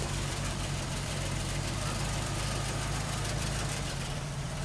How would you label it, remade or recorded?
remade